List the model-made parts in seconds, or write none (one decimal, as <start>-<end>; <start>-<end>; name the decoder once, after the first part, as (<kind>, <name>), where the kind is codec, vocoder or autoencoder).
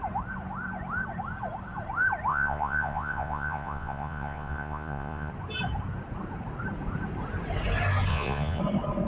2.3-5.3 (vocoder, Vocos); 8.1-8.6